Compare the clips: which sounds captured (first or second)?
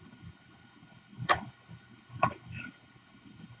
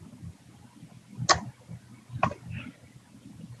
second